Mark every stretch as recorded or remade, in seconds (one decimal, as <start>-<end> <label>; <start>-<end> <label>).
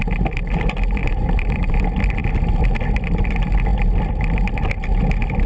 0.0-1.0 recorded; 1.0-1.8 remade; 1.8-5.5 recorded